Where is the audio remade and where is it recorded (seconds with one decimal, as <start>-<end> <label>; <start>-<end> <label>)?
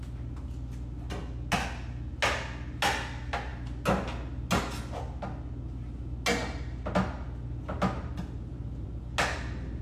0.0-9.8 recorded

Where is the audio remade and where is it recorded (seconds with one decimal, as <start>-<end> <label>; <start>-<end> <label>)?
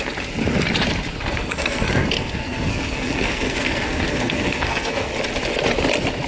0.0-1.3 recorded; 1.3-5.1 remade; 5.1-6.3 recorded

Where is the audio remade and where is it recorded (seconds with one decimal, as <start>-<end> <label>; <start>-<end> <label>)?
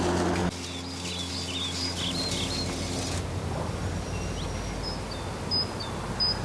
0.0-6.4 recorded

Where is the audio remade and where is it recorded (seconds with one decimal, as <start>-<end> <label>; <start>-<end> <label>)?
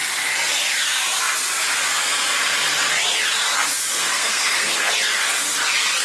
0.0-4.0 recorded; 4.0-4.9 remade; 4.9-6.0 recorded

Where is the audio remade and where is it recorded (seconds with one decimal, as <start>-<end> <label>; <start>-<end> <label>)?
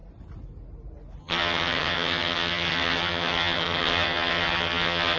0.0-1.2 recorded; 1.2-5.2 remade